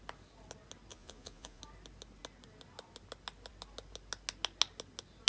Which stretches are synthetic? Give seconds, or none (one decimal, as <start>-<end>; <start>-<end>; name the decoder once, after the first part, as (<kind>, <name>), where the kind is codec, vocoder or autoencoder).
0.9-1.6 (vocoder, Vocos)